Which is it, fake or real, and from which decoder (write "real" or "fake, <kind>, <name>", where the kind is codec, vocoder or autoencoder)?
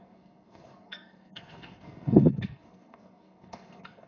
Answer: fake, codec, SNAC